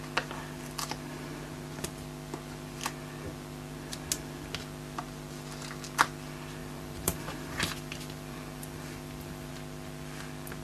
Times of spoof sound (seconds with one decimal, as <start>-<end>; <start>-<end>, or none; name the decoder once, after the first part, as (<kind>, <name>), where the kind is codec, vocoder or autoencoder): 6.6-9.5 (vocoder, BigVGAN v2)